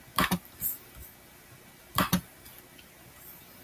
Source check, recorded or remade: recorded